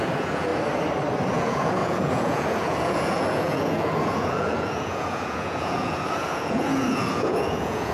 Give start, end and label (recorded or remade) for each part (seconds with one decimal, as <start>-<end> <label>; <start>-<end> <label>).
0.0-0.5 remade; 0.5-1.3 recorded; 1.3-7.9 remade